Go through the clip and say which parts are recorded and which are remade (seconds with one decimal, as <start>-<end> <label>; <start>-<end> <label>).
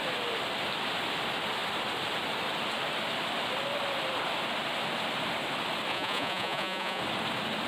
0.0-5.9 recorded; 5.9-7.0 remade; 7.0-7.7 recorded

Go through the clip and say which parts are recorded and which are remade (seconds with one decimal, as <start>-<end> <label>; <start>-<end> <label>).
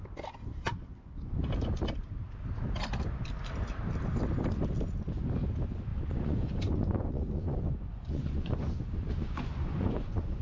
0.0-0.7 recorded; 0.7-1.4 remade; 1.4-5.9 recorded; 5.9-10.4 remade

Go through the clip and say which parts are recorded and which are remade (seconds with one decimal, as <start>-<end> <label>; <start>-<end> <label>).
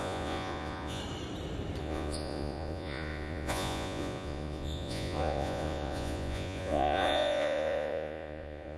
0.0-1.0 remade; 1.0-1.8 recorded; 1.8-8.8 remade